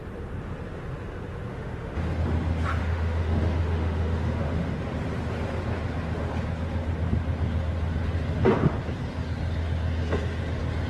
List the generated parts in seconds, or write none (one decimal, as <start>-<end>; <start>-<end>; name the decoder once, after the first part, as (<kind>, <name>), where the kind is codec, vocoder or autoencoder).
1.5-2.0 (autoencoder, DAC-VAE); 2.8-4.8